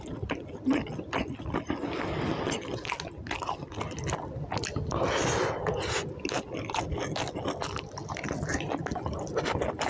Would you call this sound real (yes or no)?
yes